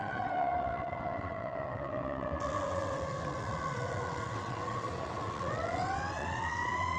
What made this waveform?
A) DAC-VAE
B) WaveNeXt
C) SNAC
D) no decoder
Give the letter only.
B